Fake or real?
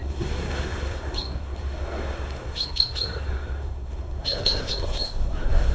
fake